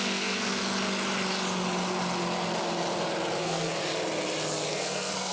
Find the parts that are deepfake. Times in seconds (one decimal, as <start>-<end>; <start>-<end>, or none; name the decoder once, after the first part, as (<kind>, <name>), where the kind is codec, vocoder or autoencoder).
0.0-0.6 (codec, SNAC); 3.4-3.8; 4.7-5.3

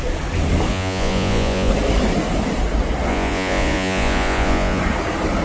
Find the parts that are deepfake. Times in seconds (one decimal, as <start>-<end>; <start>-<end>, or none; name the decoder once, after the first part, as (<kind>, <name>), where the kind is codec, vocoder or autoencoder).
0.7-1.7 (vocoder, Vocos); 3.1-4.8

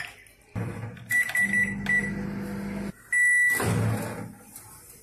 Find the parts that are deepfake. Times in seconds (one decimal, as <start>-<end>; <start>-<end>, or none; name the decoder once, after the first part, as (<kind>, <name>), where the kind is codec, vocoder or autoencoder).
none

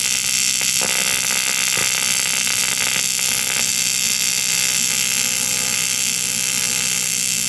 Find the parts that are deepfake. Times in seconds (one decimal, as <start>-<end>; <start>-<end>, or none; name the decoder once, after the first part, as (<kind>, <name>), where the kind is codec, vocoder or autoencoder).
none

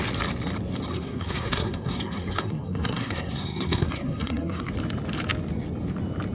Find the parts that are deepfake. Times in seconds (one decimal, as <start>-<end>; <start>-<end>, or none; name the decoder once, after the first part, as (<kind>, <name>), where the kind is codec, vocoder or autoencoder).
0.9-4.7 (codec, SNAC)

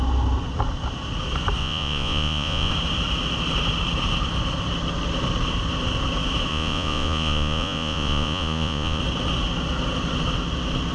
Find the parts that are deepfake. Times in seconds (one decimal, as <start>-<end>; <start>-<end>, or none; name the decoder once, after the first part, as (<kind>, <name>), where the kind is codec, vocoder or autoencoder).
1.6-2.7 (vocoder, Vocos); 6.5-9.0